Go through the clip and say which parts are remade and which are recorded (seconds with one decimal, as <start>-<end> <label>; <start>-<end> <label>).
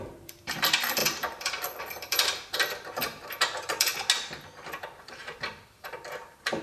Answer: 0.0-3.9 remade; 3.9-4.8 recorded; 4.8-6.6 remade